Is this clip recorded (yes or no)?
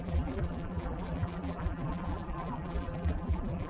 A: no